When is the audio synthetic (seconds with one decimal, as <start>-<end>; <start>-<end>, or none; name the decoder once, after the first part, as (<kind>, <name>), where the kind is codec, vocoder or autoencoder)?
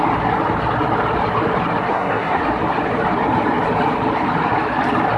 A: 1.9-2.4 (codec, SNAC)